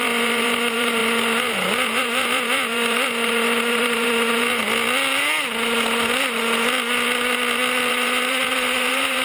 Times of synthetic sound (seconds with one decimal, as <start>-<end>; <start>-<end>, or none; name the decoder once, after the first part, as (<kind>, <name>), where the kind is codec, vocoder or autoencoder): 0.0-4.6 (vocoder, BigVGAN v2); 7.9-9.2